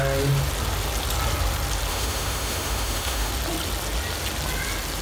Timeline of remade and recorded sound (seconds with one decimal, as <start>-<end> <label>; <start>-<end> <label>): 0.0-1.9 recorded; 1.9-3.3 remade; 3.3-5.0 recorded